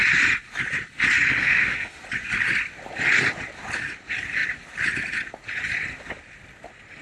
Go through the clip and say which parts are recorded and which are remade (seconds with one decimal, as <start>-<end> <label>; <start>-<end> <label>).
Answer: 0.0-1.4 recorded; 1.4-2.0 remade; 2.0-7.0 recorded